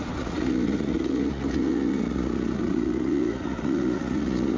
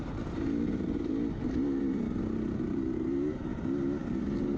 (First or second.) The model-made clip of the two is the first